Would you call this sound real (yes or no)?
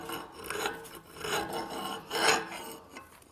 yes